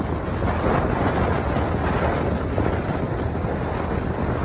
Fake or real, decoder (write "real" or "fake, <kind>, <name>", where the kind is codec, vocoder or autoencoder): real